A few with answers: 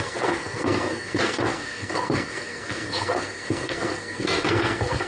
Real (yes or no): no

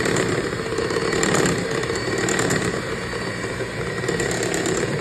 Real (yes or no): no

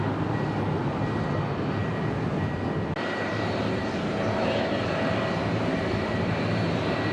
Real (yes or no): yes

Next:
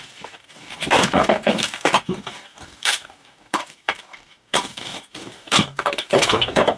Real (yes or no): no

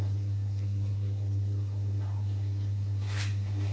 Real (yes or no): no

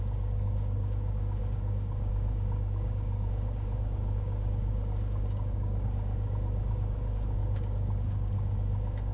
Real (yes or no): no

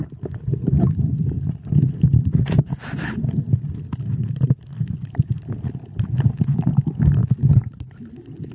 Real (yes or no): yes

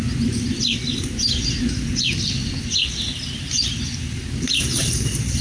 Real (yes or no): yes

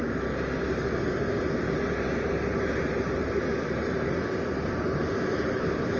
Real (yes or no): yes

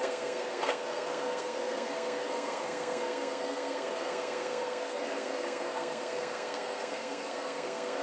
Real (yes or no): no